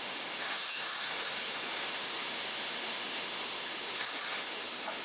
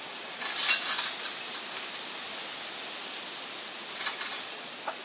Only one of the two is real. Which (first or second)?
second